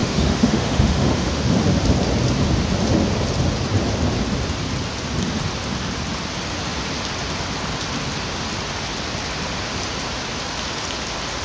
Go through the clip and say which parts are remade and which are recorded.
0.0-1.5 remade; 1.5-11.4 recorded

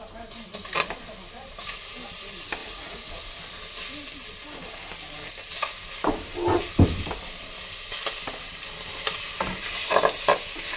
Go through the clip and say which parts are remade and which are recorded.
0.0-2.6 recorded; 2.6-3.1 remade; 3.1-10.8 recorded

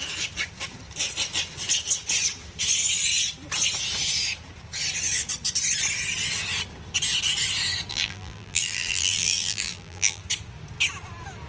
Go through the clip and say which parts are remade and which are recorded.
0.0-7.9 recorded; 7.9-10.2 remade; 10.2-11.5 recorded